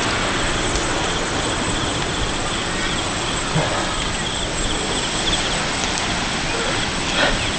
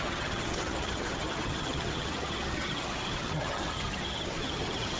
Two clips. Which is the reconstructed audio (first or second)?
second